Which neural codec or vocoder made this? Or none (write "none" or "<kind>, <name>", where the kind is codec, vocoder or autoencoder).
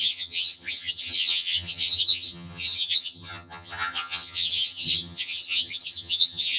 vocoder, HiFi-GAN